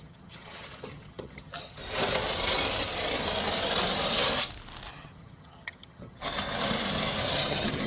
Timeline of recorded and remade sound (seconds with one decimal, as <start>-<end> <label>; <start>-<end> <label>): 0.0-1.8 remade; 1.8-4.9 recorded; 4.9-6.2 remade; 6.2-7.3 recorded; 7.3-7.9 remade